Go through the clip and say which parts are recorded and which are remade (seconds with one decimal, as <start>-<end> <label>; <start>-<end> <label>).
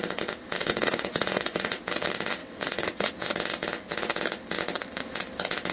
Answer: 0.0-0.7 recorded; 0.7-1.8 remade; 1.8-2.4 recorded; 2.4-3.1 remade; 3.1-5.7 recorded